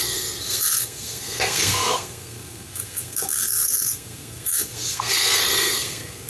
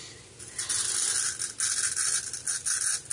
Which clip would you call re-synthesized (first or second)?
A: first